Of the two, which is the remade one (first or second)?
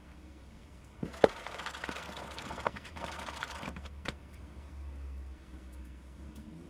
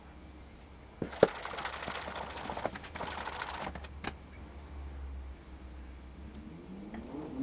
first